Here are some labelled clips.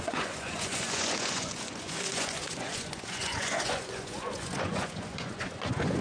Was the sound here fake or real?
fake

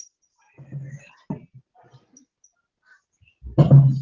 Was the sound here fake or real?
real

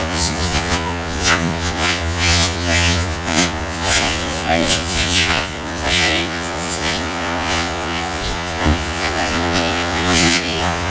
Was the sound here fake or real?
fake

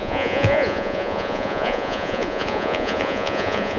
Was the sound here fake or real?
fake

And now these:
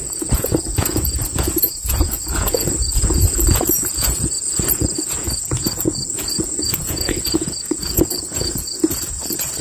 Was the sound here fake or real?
fake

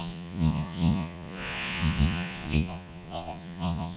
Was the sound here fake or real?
fake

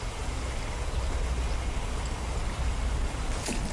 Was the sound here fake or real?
real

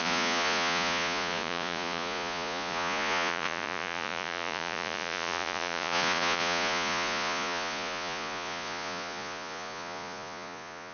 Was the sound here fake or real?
fake